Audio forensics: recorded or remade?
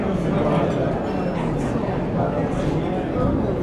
recorded